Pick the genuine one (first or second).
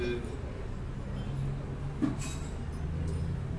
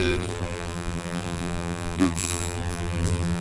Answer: first